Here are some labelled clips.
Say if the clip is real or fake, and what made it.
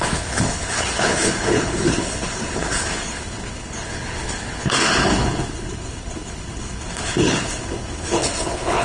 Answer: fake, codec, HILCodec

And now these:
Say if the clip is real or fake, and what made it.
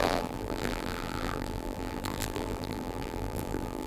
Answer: fake, vocoder, BigVGAN v2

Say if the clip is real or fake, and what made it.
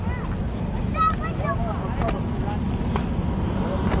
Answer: real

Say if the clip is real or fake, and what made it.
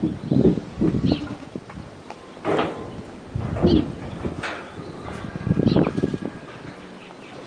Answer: real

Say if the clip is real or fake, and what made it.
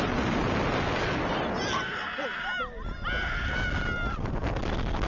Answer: real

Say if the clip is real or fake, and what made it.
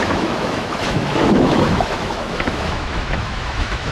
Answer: fake, autoencoder, DAC-VAE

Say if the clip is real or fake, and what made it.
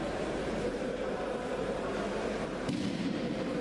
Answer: fake, vocoder, BigVGAN v2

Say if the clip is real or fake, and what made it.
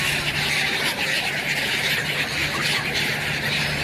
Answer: real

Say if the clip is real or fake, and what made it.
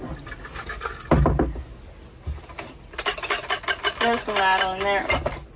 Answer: real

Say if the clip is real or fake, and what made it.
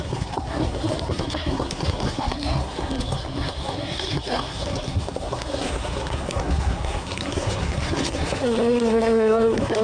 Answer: fake, codec, SNAC